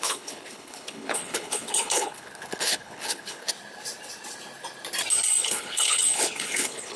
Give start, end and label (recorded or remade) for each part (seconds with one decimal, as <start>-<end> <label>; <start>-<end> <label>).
0.0-3.5 remade; 3.5-5.4 recorded; 5.4-7.0 remade